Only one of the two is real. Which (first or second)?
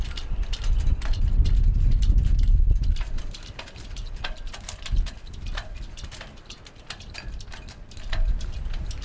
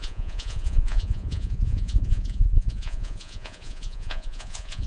first